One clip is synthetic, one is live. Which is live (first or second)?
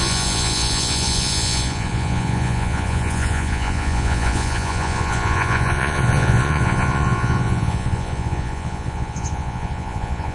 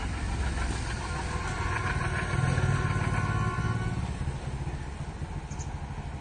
second